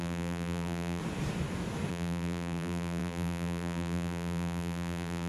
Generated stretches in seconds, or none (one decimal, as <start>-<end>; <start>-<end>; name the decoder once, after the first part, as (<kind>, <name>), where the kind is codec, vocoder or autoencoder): 0.0-1.0 (vocoder, BigVGAN v2); 1.9-5.3